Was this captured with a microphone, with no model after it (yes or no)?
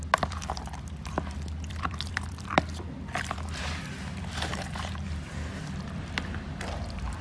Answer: no